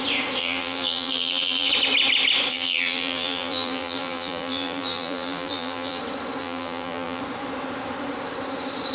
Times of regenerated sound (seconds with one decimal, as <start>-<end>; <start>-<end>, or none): 0.4-1.7; 2.5-6.0; 6.4-7.2

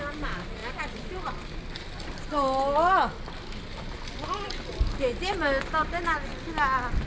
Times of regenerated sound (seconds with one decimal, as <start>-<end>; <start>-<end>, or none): none

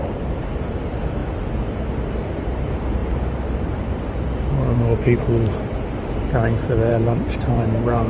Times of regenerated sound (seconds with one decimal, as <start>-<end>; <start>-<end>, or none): 0.0-1.2; 2.2-3.0; 6.9-8.1